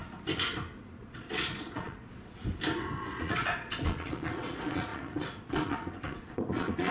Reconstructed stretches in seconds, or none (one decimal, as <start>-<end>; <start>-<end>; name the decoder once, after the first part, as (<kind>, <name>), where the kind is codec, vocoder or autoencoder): 1.0-2.4 (vocoder, Vocos); 3.1-6.9